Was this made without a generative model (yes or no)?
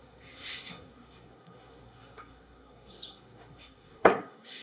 no